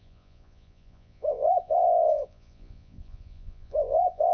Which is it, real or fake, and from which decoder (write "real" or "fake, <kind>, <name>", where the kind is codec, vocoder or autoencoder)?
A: fake, vocoder, Vocos